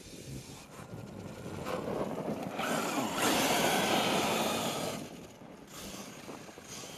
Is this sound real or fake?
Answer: real